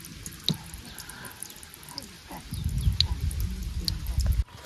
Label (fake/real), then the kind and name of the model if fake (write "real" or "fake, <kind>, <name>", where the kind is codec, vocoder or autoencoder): real